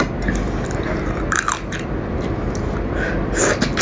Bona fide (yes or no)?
yes